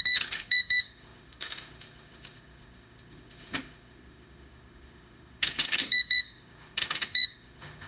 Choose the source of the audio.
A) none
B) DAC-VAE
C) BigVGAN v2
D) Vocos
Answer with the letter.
B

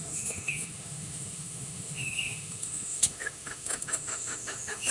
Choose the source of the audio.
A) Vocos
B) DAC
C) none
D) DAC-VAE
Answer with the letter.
D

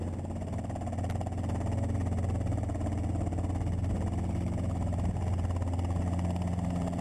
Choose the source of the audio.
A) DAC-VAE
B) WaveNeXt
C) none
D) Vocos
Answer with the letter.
C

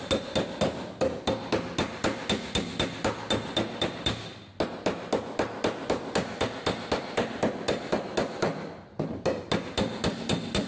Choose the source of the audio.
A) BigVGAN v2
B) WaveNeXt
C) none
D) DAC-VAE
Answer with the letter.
C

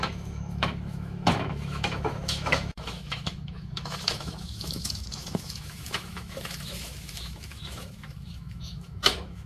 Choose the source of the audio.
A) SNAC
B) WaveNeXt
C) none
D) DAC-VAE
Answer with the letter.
D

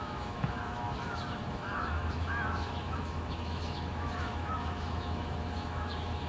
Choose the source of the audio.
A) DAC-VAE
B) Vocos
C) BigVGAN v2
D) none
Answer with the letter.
A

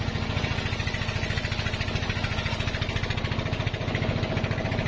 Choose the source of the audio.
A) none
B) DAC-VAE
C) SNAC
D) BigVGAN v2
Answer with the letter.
A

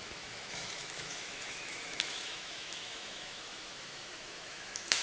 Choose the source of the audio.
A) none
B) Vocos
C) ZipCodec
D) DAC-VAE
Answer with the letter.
D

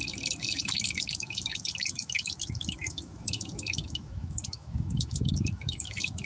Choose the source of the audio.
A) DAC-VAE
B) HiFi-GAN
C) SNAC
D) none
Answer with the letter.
A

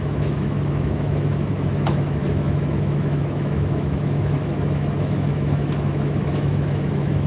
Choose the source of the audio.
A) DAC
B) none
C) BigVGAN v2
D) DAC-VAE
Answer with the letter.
D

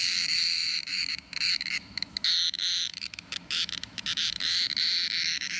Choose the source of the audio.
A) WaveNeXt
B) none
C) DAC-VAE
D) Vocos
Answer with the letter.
C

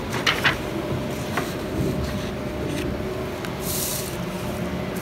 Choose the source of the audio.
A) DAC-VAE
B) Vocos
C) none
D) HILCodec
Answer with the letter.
C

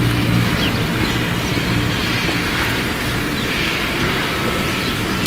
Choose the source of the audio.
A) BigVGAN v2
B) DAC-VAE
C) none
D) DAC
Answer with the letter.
C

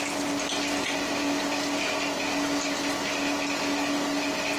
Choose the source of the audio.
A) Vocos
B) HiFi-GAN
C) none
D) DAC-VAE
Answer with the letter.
C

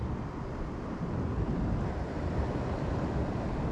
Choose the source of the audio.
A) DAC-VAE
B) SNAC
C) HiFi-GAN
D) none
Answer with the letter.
D